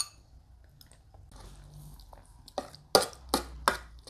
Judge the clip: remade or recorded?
recorded